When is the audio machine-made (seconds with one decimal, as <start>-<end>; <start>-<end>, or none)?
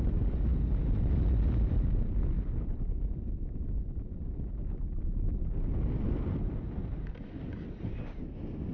none